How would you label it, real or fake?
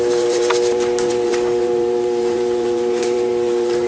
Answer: fake